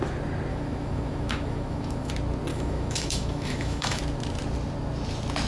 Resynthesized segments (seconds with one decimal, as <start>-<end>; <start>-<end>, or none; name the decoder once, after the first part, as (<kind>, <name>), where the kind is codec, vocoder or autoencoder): 0.5-2.1 (autoencoder, DAC-VAE); 2.5-4.0